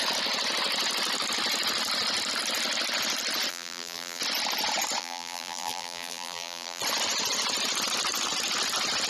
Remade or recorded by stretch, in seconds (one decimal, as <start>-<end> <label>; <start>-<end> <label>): 0.0-3.5 recorded; 3.5-4.2 remade; 4.2-5.0 recorded; 5.0-6.8 remade; 6.8-9.1 recorded